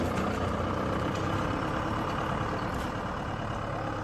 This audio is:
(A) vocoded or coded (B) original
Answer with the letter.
B